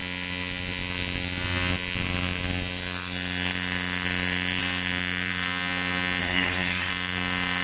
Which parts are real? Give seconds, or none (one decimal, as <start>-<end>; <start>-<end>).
0.0-6.2; 6.9-7.6